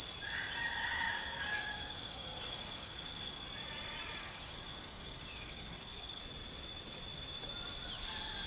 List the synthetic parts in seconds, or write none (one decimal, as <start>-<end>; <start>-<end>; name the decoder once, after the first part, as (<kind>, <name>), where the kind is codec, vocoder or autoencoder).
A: 1.7-3.4 (codec, DAC); 4.2-6.2